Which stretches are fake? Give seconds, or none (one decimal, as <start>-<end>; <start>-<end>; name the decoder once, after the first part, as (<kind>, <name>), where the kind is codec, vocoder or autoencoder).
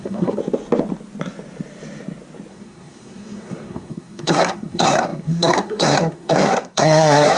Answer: 0.0-0.4 (codec, SNAC); 2.5-7.4